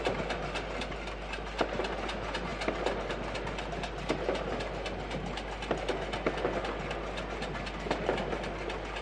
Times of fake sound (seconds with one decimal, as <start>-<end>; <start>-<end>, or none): none

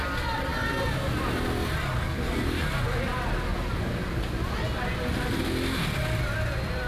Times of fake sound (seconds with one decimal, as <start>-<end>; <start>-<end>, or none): none